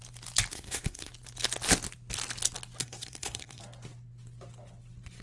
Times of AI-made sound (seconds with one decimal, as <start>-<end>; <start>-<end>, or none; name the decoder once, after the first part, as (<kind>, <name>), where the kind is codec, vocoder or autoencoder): 0.5-1.1 (codec, SNAC); 2.8-3.6

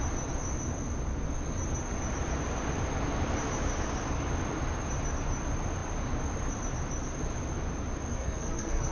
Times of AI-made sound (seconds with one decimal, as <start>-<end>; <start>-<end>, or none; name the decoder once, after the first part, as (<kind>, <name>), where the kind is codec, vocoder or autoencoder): 8.1-8.9 (codec, SNAC)

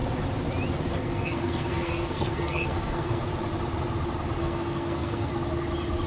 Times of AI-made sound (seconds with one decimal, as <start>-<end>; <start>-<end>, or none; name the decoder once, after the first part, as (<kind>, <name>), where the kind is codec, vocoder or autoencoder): 0.9-3.3 (codec, SNAC); 4.4-5.3

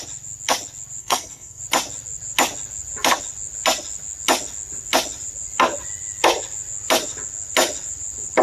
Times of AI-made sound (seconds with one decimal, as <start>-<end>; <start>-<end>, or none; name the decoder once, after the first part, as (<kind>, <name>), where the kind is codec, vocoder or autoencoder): 1.0-1.6 (codec, SNAC)

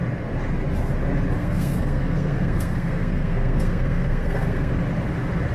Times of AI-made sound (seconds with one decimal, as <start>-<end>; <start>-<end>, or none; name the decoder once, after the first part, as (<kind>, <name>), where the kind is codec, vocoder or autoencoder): 1.4-4.7 (codec, SNAC)

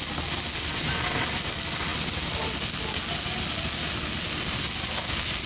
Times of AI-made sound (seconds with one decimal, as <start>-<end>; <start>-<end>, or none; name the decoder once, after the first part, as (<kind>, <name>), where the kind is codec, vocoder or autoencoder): none